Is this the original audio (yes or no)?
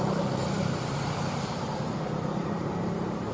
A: yes